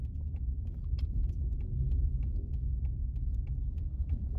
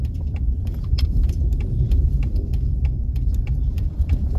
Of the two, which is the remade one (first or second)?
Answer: second